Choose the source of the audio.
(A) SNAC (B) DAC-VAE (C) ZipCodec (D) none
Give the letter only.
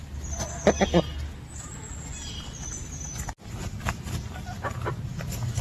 D